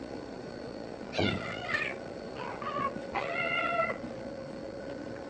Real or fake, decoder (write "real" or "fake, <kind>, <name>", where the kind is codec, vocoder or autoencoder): fake, vocoder, Vocos